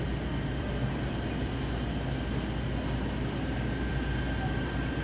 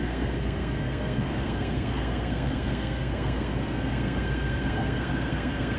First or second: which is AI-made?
second